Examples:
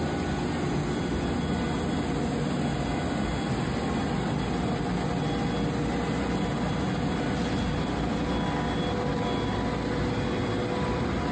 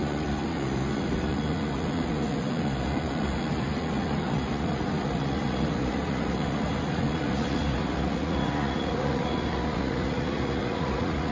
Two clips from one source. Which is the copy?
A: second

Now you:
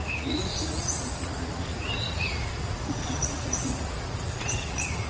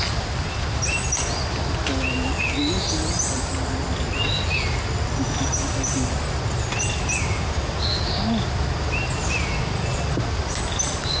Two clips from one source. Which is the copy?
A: first